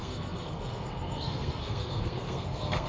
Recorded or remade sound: remade